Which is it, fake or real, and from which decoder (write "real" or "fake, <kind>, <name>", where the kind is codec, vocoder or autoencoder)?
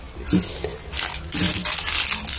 real